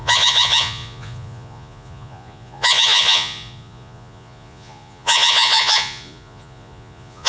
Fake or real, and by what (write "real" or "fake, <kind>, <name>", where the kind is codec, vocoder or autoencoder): fake, vocoder, Vocos